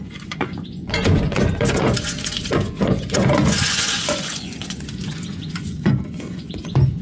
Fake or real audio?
fake